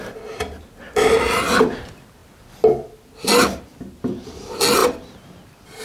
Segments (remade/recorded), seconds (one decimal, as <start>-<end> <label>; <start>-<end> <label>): 0.0-5.8 recorded